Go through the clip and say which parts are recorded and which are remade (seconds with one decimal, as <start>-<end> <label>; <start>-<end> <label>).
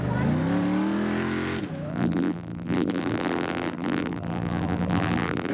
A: 0.0-1.9 recorded; 1.9-5.5 remade